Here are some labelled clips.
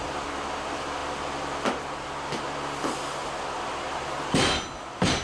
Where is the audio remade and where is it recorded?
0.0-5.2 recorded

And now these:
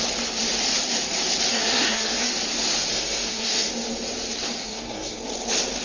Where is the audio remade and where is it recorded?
0.0-1.5 recorded; 1.5-2.3 remade; 2.3-2.9 recorded; 2.9-3.7 remade; 3.7-4.6 recorded; 4.6-5.2 remade; 5.2-5.8 recorded

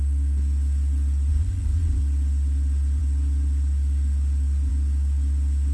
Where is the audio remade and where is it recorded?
0.0-1.3 recorded; 1.3-2.0 remade; 2.0-5.7 recorded

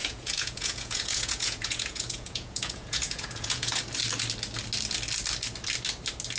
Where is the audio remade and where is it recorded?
0.0-3.8 remade; 3.8-6.4 recorded

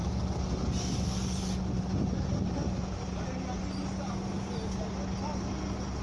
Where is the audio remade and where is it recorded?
0.0-6.0 recorded

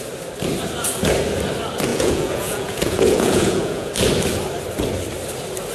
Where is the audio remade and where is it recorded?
0.0-1.9 recorded; 1.9-3.9 remade; 3.9-5.7 recorded